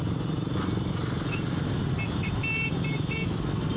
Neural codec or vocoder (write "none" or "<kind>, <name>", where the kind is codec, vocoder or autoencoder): none